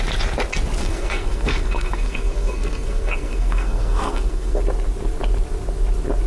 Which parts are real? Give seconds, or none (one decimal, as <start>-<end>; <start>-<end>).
0.0-0.8; 4.6-6.3